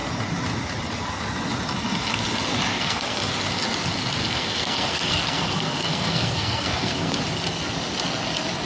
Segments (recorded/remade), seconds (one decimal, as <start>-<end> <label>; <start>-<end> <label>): 0.0-2.7 recorded; 2.7-3.2 remade; 3.2-4.2 recorded; 4.2-7.2 remade; 7.2-8.7 recorded

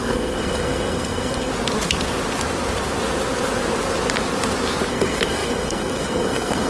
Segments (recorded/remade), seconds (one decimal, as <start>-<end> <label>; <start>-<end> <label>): 0.0-1.5 remade; 1.5-4.9 recorded; 4.9-6.7 remade